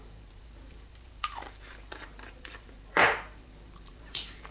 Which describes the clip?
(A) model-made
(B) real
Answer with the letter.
A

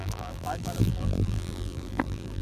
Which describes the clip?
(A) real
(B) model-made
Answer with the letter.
B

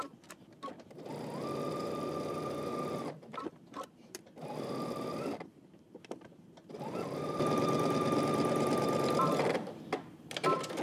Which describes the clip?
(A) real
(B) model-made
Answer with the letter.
B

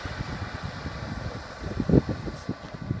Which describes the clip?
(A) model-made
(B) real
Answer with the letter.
B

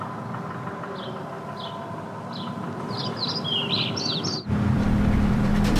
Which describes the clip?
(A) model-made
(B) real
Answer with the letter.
A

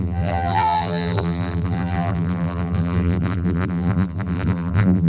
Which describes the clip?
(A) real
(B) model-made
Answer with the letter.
B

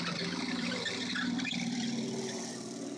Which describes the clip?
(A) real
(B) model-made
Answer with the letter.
B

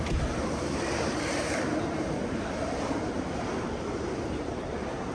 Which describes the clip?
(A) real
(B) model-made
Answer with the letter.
B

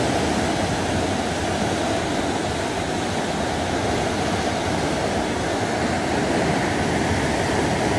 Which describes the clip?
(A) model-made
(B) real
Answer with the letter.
B